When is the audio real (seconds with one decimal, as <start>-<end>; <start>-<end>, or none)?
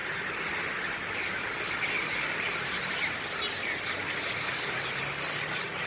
0.0-3.1